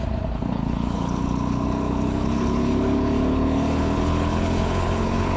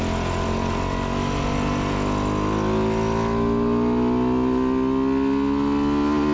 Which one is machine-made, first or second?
first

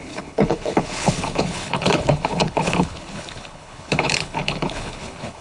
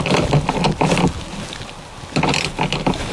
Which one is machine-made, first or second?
first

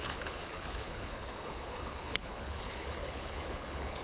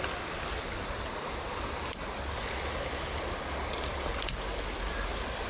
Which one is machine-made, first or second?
first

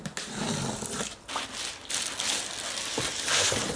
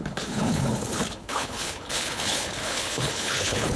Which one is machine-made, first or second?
second